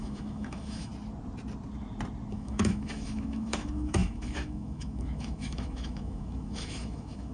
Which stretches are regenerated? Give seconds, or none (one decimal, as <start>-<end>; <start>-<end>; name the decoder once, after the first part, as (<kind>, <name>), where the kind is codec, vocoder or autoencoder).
0.0-0.9 (autoencoder, DAC-VAE); 2.3-7.3